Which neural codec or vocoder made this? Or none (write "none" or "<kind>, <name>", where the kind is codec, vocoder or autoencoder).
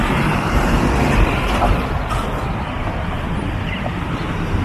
vocoder, BigVGAN v2